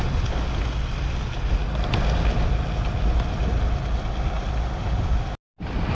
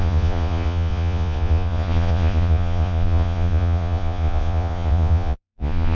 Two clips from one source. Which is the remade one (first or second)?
second